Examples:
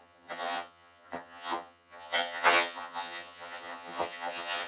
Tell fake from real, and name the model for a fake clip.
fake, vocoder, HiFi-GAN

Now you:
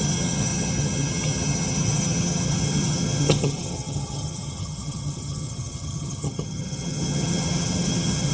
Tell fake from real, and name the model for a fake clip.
fake, vocoder, HiFi-GAN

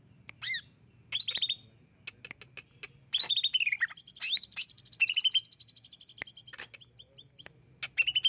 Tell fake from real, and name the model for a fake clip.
real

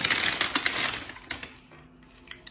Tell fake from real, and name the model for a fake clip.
real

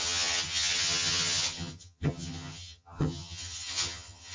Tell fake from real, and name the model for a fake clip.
fake, vocoder, HiFi-GAN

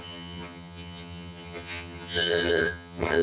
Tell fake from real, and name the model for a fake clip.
fake, vocoder, HiFi-GAN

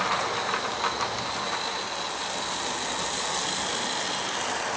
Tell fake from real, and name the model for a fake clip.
real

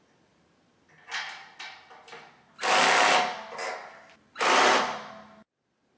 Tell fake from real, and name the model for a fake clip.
real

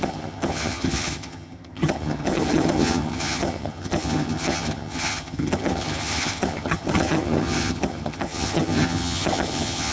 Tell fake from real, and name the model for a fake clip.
fake, vocoder, HiFi-GAN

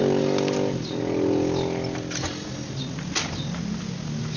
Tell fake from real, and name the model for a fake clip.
real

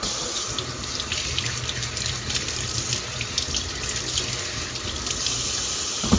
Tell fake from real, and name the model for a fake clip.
real